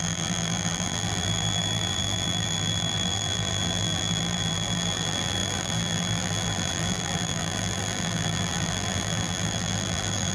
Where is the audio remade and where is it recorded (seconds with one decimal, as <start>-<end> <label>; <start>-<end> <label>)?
0.0-10.3 remade